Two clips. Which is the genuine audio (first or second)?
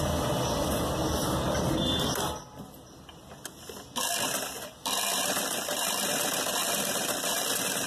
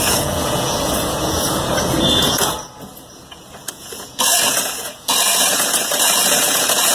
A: first